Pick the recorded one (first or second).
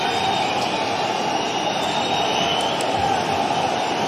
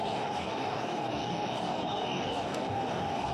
first